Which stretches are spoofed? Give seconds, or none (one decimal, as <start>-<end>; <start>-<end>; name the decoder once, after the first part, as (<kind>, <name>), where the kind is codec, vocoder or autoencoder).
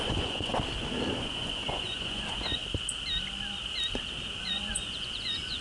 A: 0.0-0.5 (vocoder, Vocos); 1.2-2.6; 4.4-5.6